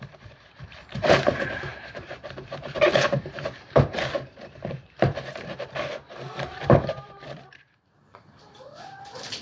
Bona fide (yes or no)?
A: no